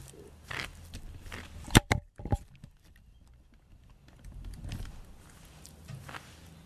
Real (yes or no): no